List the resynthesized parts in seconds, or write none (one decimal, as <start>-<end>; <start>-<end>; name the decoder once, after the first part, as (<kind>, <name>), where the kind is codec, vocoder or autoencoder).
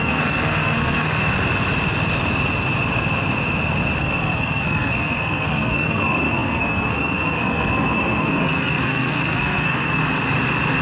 0.0-1.3 (codec, SNAC); 4.0-10.0